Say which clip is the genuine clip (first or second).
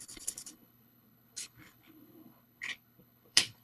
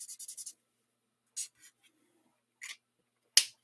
second